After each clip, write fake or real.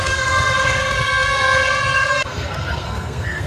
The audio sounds fake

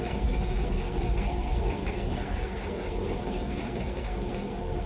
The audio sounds fake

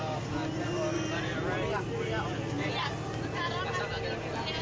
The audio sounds real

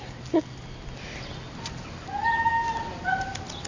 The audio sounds real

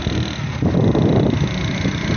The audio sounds real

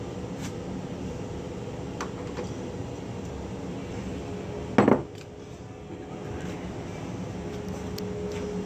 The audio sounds real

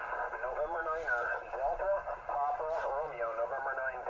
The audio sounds real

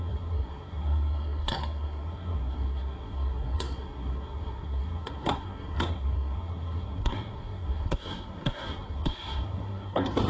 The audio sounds fake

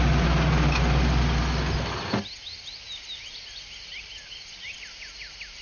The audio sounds real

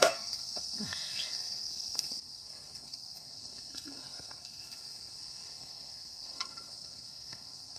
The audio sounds fake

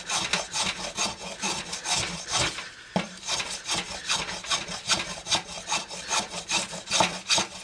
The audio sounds real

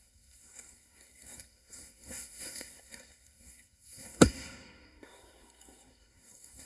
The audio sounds fake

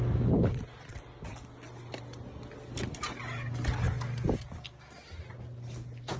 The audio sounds real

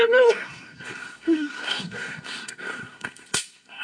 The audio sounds fake